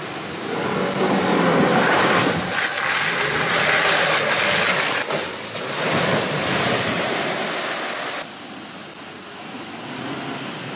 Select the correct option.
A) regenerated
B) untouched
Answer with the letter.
B